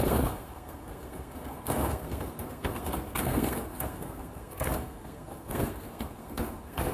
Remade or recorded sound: remade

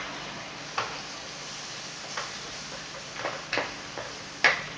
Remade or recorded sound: recorded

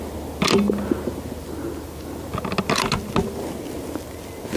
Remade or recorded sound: recorded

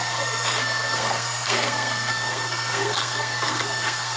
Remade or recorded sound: remade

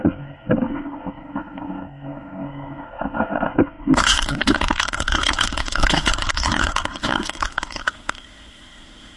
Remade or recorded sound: remade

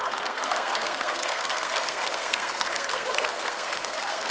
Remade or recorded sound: remade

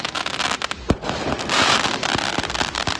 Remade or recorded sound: recorded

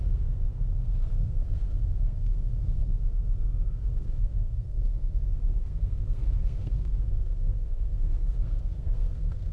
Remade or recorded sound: remade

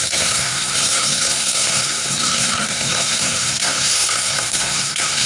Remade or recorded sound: remade